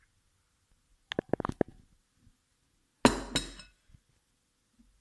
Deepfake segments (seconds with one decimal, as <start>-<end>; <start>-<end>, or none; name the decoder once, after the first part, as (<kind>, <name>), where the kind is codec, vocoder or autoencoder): none